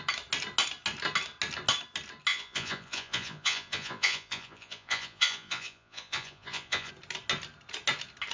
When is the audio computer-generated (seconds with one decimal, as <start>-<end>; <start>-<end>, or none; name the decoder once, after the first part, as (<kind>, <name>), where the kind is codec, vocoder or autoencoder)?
2.3-6.9 (vocoder, Vocos)